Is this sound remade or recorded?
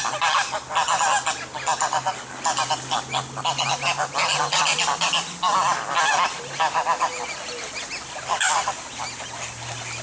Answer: recorded